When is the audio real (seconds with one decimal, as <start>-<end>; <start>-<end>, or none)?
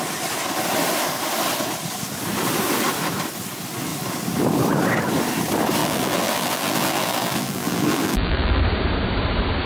0.0-5.8; 8.6-9.7